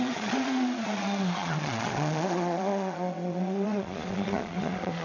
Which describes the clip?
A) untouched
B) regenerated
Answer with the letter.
B